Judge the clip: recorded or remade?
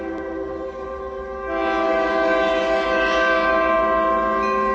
recorded